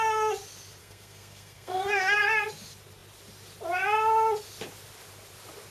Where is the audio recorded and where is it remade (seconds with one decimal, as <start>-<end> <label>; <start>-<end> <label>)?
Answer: 0.0-0.8 recorded; 0.8-2.2 remade; 2.2-5.7 recorded